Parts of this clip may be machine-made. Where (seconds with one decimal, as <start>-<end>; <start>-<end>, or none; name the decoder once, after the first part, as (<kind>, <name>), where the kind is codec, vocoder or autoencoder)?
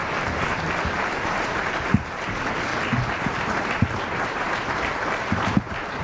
0.0-6.0 (vocoder, BigVGAN v2)